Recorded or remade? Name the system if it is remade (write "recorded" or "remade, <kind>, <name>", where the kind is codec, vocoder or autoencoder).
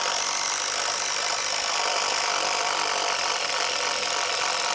remade, vocoder, BigVGAN v2